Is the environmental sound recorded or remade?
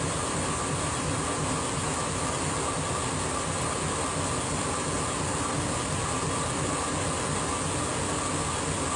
recorded